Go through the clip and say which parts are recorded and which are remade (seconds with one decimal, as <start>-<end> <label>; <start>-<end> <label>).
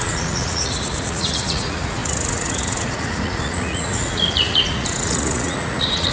0.0-6.1 remade